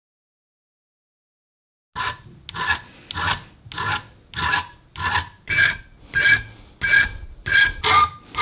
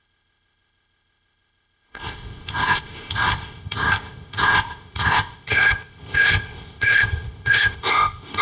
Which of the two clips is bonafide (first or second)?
first